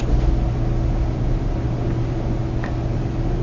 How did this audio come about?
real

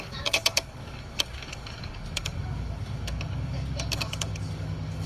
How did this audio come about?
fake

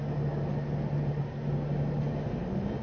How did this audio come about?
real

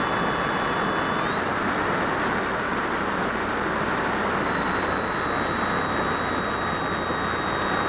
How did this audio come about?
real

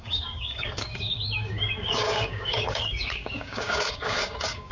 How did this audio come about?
fake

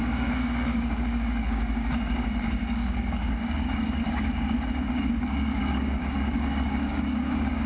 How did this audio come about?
fake